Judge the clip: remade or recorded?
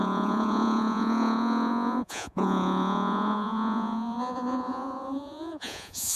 remade